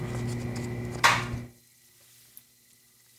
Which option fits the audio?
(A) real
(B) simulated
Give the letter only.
A